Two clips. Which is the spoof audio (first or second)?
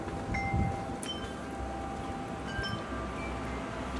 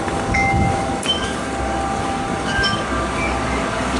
second